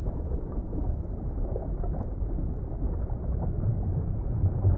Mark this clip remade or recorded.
remade